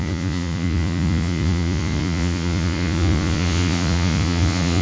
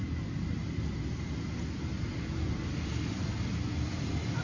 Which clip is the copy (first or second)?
first